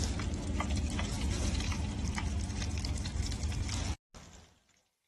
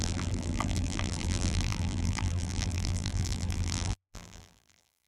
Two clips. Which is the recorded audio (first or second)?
first